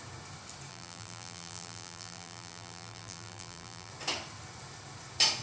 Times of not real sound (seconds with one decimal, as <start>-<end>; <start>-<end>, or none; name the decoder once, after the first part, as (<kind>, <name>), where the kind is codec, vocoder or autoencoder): 0.7-3.9 (vocoder, BigVGAN v2)